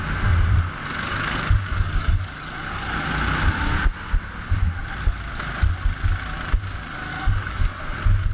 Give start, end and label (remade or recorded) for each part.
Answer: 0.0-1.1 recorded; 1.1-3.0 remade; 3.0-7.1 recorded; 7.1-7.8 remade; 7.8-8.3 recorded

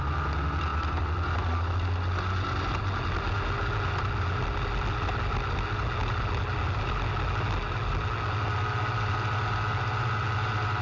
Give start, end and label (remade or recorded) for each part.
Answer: 0.0-10.8 recorded

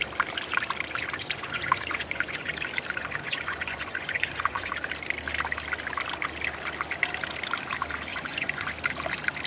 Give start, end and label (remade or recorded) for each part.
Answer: 0.0-1.2 recorded; 1.2-2.5 remade; 2.5-3.0 recorded; 3.0-4.7 remade; 4.7-8.1 recorded; 8.1-8.7 remade; 8.7-9.5 recorded

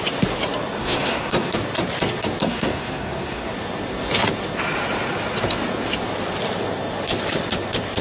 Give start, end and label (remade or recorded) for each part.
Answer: 0.0-0.8 recorded; 0.8-1.5 remade; 1.5-2.4 recorded; 2.4-3.5 remade; 3.5-8.0 recorded